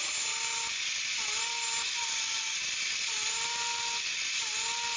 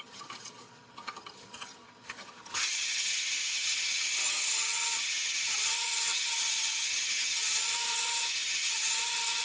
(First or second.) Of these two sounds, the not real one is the second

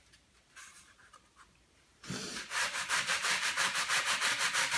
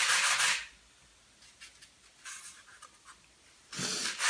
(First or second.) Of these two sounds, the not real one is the first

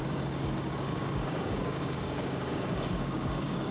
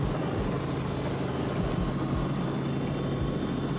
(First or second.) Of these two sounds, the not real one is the first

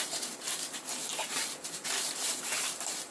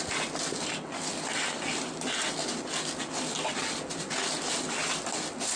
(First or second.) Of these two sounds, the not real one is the first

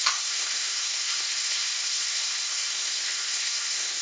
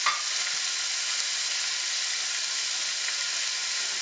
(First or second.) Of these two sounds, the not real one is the first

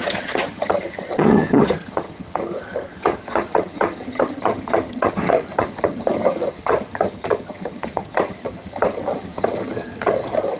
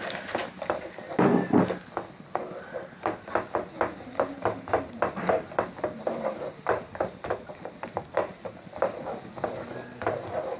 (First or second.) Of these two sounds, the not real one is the first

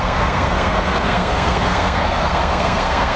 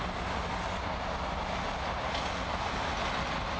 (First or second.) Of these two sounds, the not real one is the first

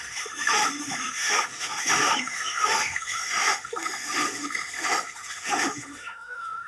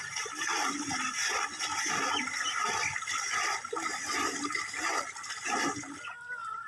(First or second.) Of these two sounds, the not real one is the first